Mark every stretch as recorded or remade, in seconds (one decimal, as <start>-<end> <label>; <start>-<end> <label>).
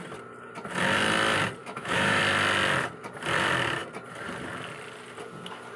0.0-1.6 recorded; 1.6-2.2 remade; 2.2-5.8 recorded